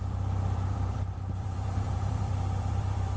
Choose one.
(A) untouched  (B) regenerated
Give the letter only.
B